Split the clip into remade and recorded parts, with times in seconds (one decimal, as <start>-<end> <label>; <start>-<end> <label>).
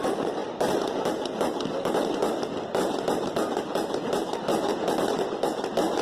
0.0-2.2 remade; 2.2-6.0 recorded